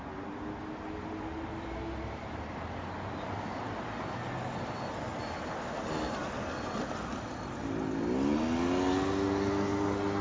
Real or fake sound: real